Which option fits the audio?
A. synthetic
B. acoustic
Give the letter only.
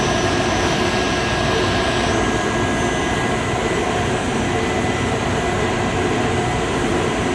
B